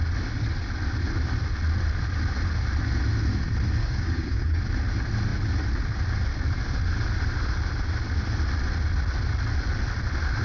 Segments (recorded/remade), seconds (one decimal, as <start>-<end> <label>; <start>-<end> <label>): 0.0-3.8 recorded; 3.8-4.6 remade; 4.6-10.4 recorded